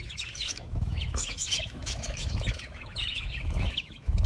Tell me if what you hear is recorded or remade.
remade